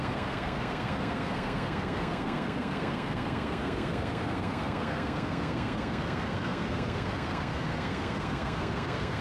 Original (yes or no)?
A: no